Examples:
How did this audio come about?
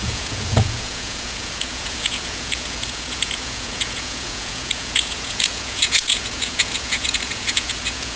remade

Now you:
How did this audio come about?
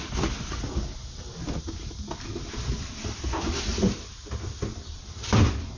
recorded